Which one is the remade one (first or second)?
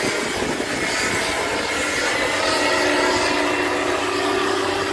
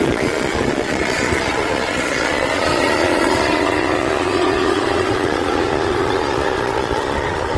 second